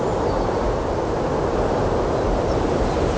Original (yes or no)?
yes